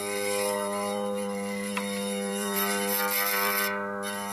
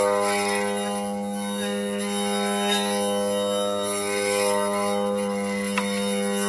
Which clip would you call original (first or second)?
second